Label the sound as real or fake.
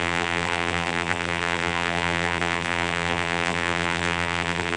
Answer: fake